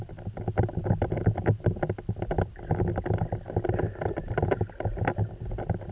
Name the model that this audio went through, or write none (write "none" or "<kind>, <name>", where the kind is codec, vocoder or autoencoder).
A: none